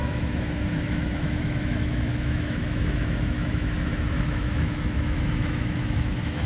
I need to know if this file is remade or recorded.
remade